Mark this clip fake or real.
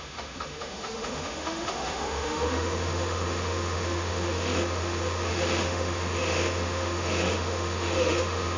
fake